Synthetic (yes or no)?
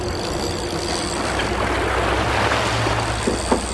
no